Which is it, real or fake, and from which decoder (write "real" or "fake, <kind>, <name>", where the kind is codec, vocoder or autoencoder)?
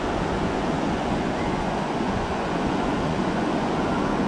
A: fake, vocoder, Vocos